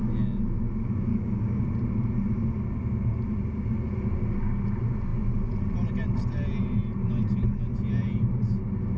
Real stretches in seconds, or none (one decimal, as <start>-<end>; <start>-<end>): 0.0-1.1; 1.6-9.0